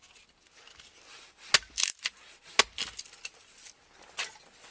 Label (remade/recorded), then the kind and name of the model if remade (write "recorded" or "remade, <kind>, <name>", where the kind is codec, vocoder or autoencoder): recorded